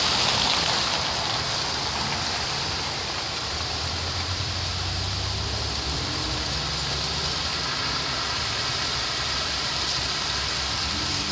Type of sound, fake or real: real